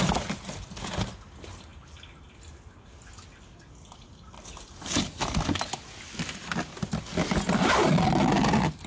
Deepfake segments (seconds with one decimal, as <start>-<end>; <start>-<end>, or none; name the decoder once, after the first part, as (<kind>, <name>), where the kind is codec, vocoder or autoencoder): none